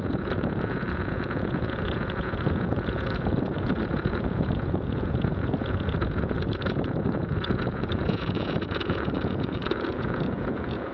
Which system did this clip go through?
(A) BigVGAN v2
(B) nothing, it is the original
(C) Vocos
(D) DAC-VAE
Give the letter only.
C